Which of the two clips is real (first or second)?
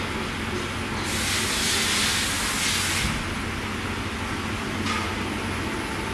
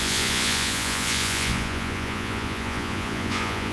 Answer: first